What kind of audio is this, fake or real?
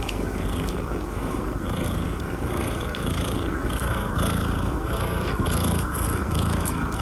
fake